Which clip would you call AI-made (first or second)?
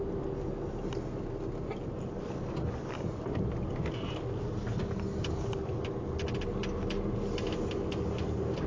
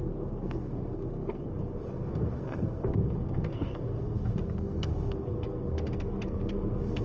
second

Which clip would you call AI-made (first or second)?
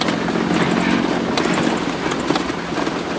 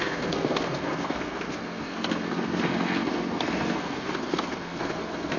second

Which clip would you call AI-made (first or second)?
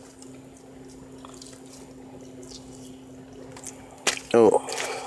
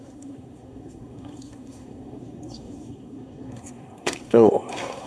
second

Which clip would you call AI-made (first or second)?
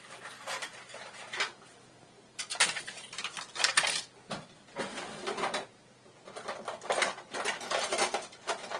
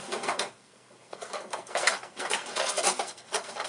second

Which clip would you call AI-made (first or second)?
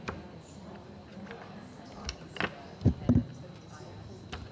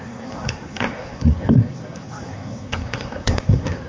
second